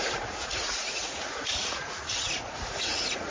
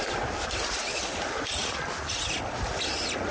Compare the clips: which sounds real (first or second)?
second